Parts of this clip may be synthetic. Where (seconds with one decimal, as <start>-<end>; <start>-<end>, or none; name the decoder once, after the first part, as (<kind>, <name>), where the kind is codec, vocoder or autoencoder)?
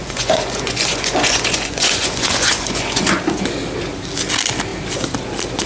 0.0-3.2 (vocoder, Vocos)